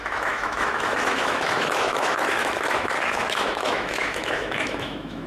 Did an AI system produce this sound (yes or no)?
yes